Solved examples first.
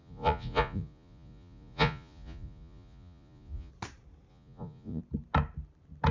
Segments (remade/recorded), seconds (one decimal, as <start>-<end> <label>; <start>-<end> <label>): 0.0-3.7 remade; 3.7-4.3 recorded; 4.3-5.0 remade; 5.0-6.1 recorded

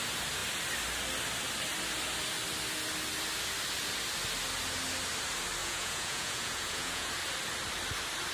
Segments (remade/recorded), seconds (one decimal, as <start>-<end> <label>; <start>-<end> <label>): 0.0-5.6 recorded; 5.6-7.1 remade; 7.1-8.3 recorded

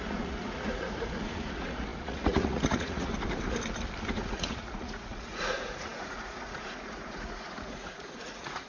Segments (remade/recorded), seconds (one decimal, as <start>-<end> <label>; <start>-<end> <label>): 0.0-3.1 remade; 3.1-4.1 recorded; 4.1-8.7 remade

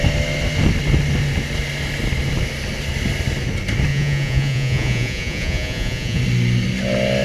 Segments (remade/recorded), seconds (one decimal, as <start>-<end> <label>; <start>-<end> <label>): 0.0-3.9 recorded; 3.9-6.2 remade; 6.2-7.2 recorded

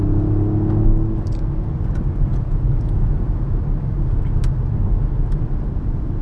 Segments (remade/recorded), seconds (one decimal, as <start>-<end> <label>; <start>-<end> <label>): 0.0-2.3 recorded; 2.3-3.6 remade; 3.6-6.2 recorded

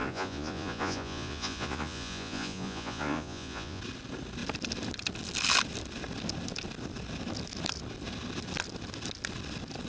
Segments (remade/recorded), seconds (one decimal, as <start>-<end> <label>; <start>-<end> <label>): 0.0-3.8 remade; 3.8-9.9 recorded

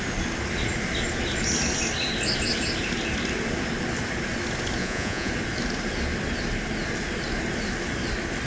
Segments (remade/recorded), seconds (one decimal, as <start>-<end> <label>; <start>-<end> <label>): 0.0-4.8 recorded; 4.8-5.3 remade; 5.3-8.5 recorded

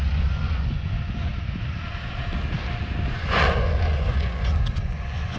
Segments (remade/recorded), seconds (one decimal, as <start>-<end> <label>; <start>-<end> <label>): 0.0-1.3 remade; 1.3-3.1 recorded; 3.1-5.4 remade